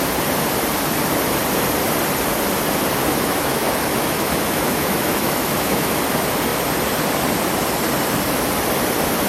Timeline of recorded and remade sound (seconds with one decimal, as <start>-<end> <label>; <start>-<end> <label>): 0.0-3.0 recorded; 3.0-6.0 remade; 6.0-9.3 recorded